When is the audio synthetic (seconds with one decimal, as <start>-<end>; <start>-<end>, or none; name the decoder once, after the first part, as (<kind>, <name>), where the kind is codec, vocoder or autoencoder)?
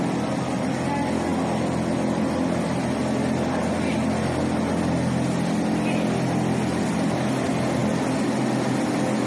none